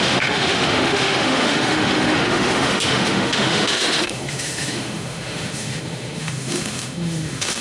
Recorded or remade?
remade